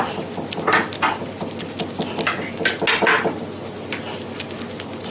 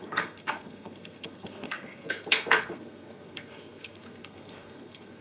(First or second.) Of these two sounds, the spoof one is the second